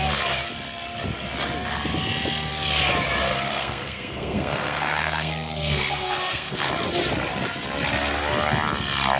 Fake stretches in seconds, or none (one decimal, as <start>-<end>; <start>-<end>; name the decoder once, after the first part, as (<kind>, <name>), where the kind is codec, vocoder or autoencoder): 3.3-6.7 (codec, SNAC)